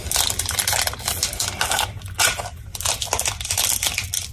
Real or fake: real